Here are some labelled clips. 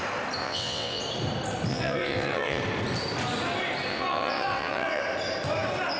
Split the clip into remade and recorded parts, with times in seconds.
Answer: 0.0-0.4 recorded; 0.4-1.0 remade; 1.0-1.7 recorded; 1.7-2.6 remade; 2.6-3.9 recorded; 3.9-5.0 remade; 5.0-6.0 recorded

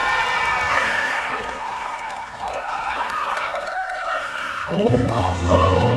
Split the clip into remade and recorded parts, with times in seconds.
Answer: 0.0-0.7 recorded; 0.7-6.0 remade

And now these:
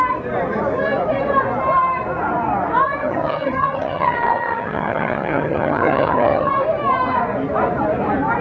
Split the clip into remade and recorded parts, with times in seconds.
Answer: 0.0-3.0 recorded; 3.0-6.5 remade; 6.5-8.4 recorded